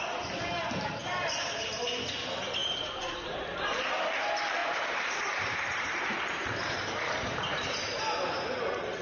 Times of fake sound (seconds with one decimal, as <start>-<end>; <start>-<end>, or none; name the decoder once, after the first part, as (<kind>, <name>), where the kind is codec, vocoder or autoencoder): 2.6-3.4 (vocoder, BigVGAN v2); 4.6-8.0